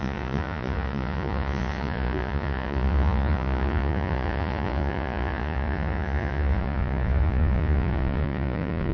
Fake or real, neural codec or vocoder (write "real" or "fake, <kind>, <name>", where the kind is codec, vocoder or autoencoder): fake, vocoder, Vocos